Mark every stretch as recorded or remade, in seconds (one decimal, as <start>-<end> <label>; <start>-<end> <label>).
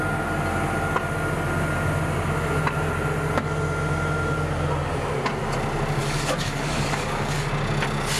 0.0-6.0 recorded; 6.0-7.5 remade; 7.5-8.2 recorded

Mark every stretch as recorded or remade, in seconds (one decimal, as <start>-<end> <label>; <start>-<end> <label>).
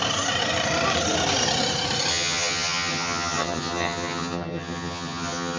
0.0-2.1 recorded; 2.1-5.6 remade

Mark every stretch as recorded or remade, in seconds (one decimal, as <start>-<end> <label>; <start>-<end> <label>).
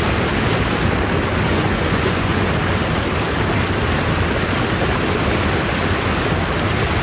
0.0-1.5 recorded; 1.5-2.5 remade; 2.5-7.0 recorded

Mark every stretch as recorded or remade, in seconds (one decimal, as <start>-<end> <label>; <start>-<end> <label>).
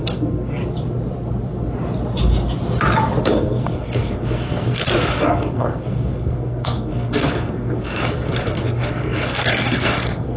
0.0-0.6 remade; 0.6-3.2 recorded; 3.2-10.4 remade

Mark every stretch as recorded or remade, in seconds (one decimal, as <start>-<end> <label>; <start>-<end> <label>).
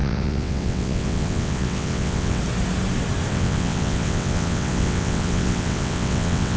0.0-2.4 remade; 2.4-3.3 recorded; 3.3-6.6 remade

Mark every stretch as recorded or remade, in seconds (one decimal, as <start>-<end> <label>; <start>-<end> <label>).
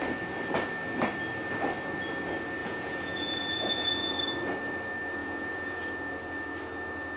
0.0-2.6 recorded; 2.6-4.2 remade; 4.2-5.2 recorded; 5.2-5.8 remade; 5.8-7.2 recorded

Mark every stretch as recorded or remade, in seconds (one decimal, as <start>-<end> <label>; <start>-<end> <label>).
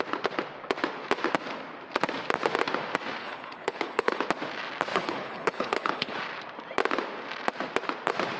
0.0-3.2 recorded; 3.2-4.2 remade; 4.2-4.9 recorded; 4.9-6.2 remade; 6.2-8.4 recorded